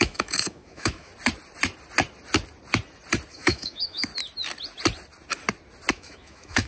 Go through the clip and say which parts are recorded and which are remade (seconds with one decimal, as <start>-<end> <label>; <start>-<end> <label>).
0.0-1.1 remade; 1.1-3.3 recorded; 3.3-4.1 remade; 4.1-5.9 recorded; 5.9-6.7 remade